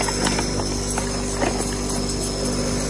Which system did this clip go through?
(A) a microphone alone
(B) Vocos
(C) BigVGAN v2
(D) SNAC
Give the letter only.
A